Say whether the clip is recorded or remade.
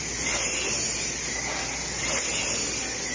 recorded